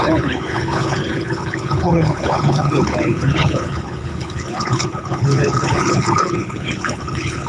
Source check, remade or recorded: remade